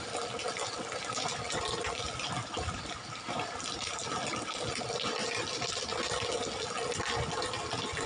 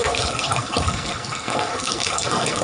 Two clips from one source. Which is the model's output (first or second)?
second